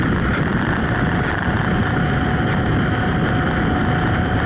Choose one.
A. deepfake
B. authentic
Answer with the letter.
B